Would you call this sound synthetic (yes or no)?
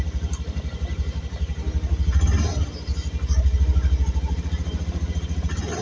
no